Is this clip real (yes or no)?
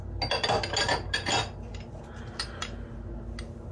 yes